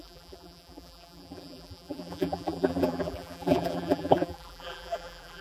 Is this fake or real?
fake